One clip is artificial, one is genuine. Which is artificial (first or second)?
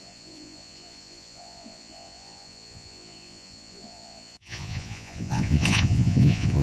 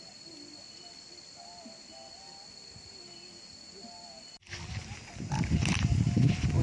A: first